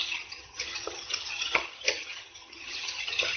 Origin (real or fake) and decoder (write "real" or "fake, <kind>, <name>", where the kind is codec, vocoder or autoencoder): fake, vocoder, HiFi-GAN